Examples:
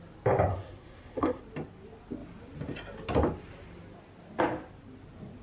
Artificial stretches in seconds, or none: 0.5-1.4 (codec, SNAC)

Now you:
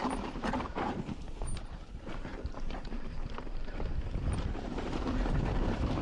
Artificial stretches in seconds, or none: 0.0-6.0 (vocoder, BigVGAN v2)